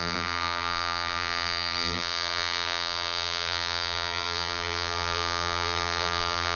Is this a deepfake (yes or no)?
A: yes